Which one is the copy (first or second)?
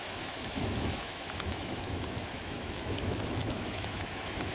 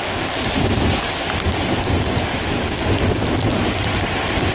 first